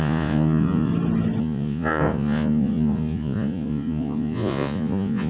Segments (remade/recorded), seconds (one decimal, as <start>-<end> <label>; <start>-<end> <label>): 0.0-0.9 remade; 0.9-1.4 recorded; 1.4-5.3 remade